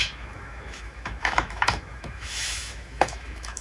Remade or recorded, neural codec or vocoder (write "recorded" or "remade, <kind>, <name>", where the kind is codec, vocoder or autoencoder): remade, autoencoder, DAC-VAE